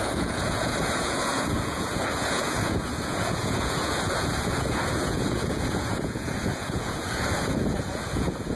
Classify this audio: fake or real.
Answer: fake